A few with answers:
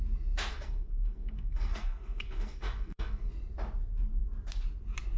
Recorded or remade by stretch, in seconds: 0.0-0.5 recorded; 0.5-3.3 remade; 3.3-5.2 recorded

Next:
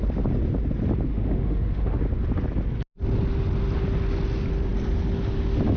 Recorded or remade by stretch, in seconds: 0.0-1.1 recorded; 1.1-2.0 remade; 2.0-5.8 recorded

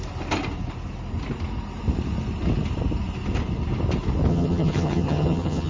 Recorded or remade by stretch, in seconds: 0.0-4.3 recorded; 4.3-5.7 remade

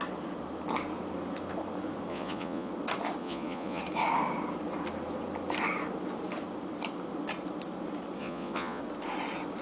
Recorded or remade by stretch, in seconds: 0.0-2.1 recorded; 2.1-2.7 remade; 2.7-3.2 recorded; 3.2-3.8 remade; 3.8-8.2 recorded; 8.2-8.8 remade; 8.8-9.6 recorded

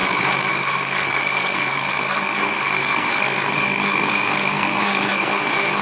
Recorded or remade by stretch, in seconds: 0.0-0.5 recorded; 0.5-5.8 remade

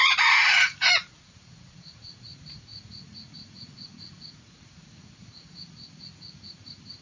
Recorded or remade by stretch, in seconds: 0.0-7.0 remade

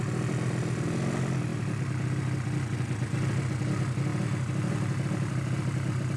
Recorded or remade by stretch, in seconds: 0.0-6.2 recorded